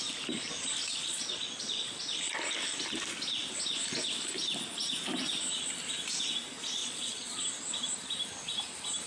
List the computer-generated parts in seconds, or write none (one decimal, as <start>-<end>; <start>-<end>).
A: 0.9-2.0; 6.8-7.4